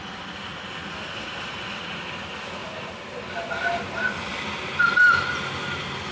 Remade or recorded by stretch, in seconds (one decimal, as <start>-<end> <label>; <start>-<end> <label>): 0.0-2.6 recorded; 2.6-4.9 remade; 4.9-6.1 recorded